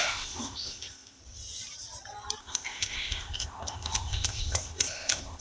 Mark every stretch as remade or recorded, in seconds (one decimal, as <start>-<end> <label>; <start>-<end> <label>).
0.0-1.2 remade; 1.2-2.4 recorded; 2.4-5.4 remade